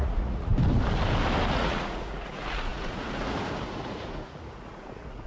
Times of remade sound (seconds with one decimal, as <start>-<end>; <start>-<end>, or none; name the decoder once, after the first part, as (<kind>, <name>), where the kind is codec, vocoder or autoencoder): 0.0-0.5 (vocoder, Vocos); 1.5-5.3